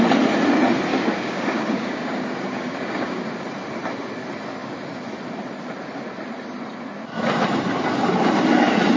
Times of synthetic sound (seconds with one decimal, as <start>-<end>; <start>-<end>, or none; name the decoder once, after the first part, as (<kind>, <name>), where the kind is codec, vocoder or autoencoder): 0.9-3.2 (codec, DAC)